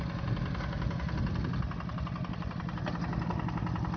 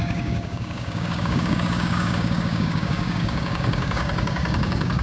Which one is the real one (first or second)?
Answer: first